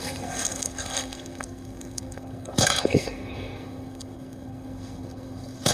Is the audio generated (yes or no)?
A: yes